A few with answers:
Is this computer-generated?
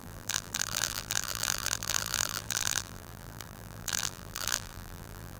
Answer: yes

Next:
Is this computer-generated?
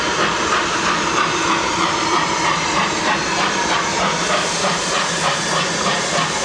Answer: yes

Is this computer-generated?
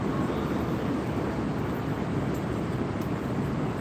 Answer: no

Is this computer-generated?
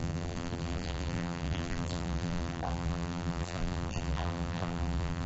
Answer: yes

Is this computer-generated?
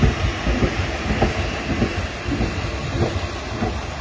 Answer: no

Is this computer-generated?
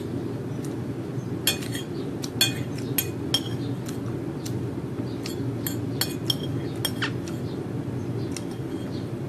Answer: no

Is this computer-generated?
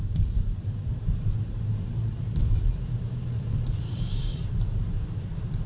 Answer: yes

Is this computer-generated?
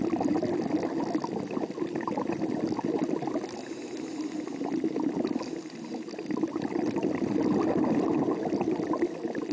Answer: no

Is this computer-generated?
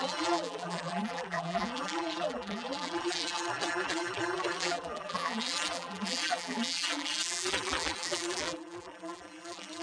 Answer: yes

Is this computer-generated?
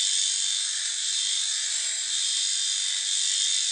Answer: yes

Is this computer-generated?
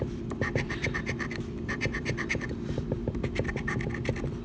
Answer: yes